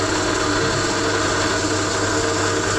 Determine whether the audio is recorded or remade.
recorded